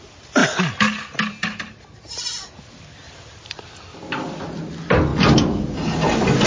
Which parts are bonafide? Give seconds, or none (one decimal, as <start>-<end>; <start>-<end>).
0.0-6.5